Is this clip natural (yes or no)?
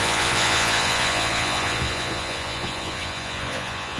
no